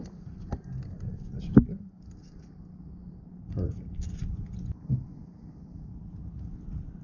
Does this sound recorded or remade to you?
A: recorded